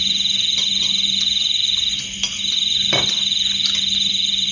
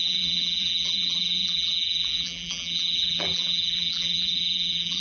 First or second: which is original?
first